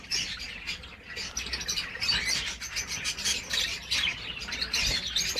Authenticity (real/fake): real